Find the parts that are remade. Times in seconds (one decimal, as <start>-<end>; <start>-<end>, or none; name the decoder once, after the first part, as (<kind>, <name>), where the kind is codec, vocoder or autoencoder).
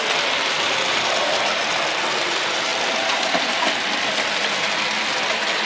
none